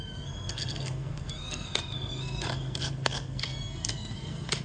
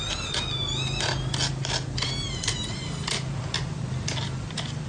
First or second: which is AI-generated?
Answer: first